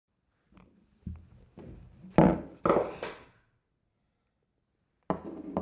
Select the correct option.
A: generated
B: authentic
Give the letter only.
B